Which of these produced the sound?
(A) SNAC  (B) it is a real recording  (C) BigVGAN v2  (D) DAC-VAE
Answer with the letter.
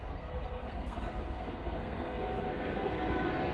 A